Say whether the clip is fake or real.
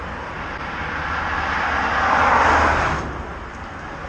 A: real